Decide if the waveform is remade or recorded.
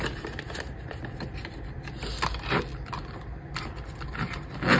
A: recorded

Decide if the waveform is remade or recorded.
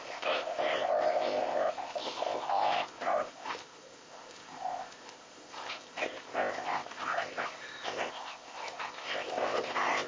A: remade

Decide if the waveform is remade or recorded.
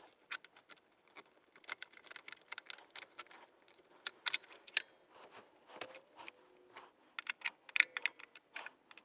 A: recorded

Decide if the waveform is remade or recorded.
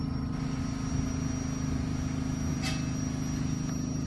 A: recorded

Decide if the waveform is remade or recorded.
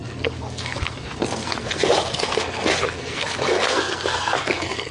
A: remade